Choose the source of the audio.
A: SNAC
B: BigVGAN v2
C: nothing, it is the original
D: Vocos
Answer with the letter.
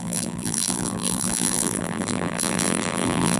B